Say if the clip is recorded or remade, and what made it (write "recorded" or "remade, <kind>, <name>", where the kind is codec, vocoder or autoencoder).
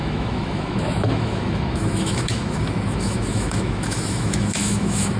remade, autoencoder, DAC-VAE